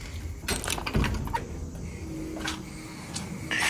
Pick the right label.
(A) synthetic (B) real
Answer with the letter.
B